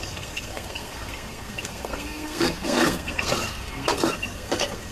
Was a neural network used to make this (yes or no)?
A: yes